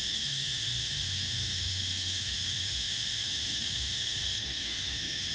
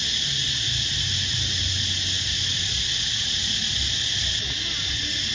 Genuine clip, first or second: second